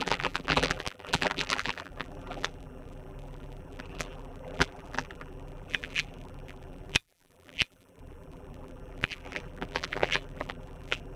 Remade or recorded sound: remade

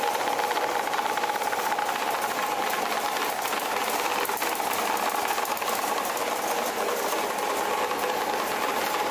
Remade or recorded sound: recorded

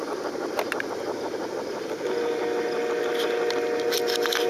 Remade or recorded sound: recorded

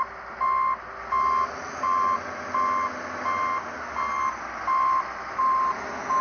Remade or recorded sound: recorded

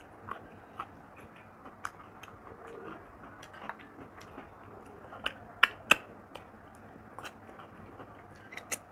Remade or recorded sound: recorded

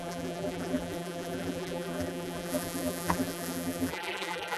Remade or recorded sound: remade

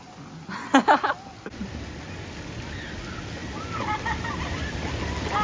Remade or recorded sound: recorded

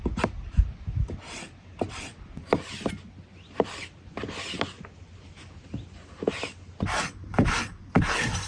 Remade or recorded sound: recorded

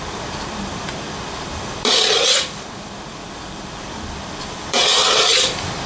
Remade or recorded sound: remade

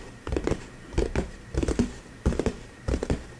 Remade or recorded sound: remade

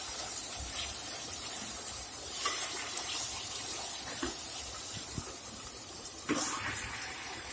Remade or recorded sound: remade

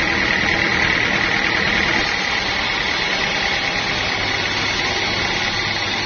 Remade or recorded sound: recorded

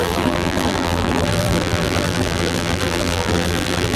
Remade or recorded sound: remade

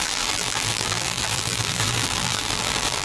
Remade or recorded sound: remade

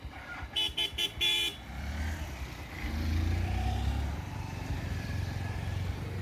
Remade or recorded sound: recorded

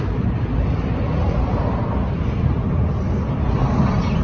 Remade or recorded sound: remade